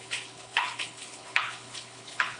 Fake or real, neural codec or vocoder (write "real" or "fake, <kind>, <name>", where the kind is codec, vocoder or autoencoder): fake, codec, HILCodec